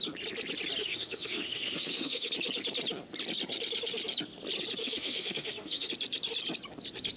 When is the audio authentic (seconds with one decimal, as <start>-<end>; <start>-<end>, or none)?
0.0-0.8; 2.3-4.8; 5.9-7.2